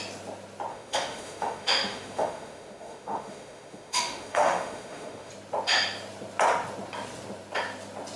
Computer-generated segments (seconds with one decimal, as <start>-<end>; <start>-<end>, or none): 0.7-5.3